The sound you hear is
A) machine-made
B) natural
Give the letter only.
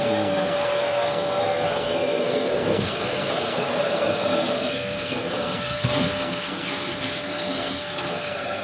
A